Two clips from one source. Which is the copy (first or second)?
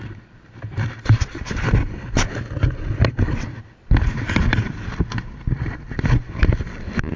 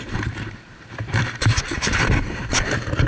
second